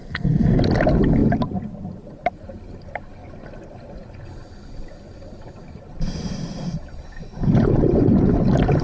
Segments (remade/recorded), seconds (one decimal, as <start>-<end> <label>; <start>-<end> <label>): 0.0-0.6 remade; 0.6-8.8 recorded